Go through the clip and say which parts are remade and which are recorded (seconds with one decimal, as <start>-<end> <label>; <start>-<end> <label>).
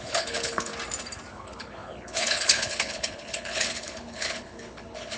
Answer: 0.0-0.7 remade; 0.7-1.3 recorded; 1.3-5.2 remade